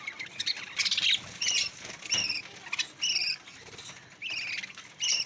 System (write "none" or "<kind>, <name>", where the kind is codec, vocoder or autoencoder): none